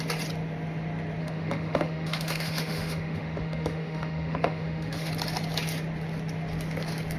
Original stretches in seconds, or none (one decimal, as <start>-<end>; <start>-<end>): 0.0-1.2; 5.1-7.2